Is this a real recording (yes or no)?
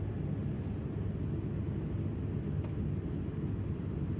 yes